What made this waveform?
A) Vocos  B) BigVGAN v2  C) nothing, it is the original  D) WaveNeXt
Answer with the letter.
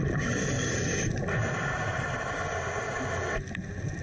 C